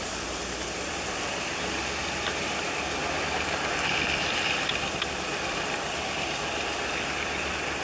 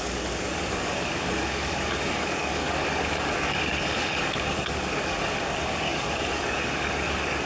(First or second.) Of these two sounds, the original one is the first